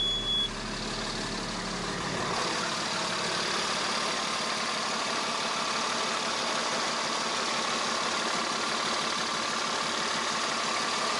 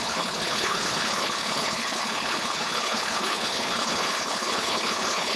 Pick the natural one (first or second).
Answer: first